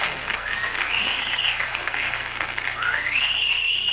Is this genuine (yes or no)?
no